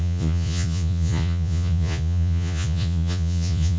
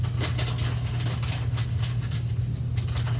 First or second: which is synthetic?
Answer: first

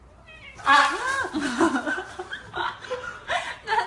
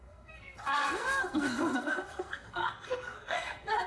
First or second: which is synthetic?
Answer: second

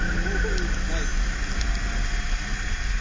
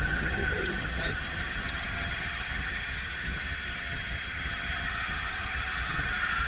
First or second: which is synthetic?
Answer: second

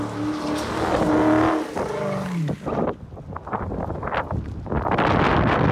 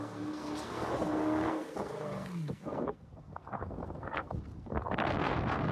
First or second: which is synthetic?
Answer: second